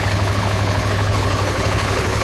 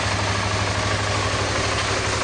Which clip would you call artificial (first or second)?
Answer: first